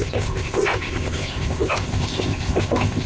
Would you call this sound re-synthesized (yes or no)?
yes